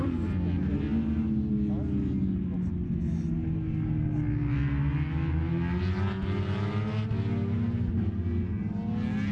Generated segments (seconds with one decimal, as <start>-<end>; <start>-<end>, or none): none

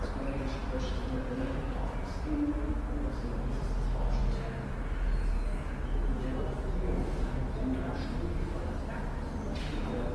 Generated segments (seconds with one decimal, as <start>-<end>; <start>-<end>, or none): none

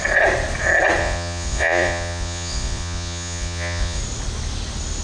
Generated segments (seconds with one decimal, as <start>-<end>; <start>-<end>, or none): 1.0-4.0